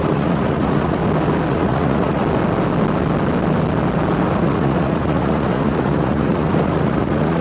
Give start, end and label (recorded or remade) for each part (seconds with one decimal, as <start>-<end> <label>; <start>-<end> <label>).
0.0-1.0 remade; 1.0-1.5 recorded; 1.5-2.2 remade; 2.2-4.4 recorded; 4.4-7.4 remade